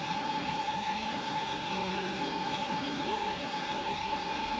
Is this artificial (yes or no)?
yes